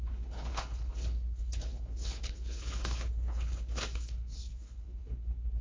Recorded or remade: remade